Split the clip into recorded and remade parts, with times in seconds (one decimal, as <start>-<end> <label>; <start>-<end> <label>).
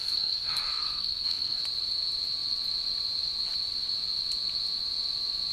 0.0-1.6 remade; 1.6-5.5 recorded